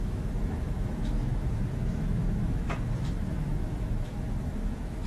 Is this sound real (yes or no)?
no